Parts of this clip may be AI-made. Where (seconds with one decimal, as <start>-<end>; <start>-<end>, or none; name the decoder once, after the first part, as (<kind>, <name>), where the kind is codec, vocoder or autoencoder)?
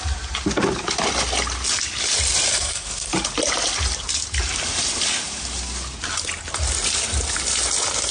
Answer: 2.5-3.1 (codec, SNAC)